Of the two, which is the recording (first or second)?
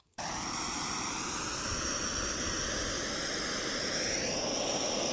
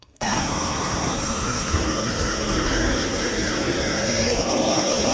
first